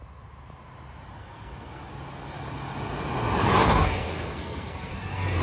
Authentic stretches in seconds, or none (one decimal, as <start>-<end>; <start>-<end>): 0.0-1.2; 1.8-3.4